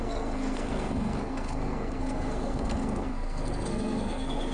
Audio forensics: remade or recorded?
remade